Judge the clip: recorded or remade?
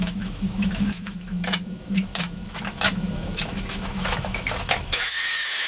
remade